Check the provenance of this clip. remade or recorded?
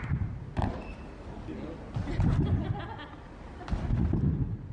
recorded